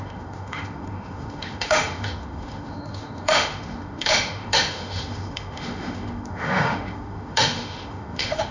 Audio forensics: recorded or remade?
remade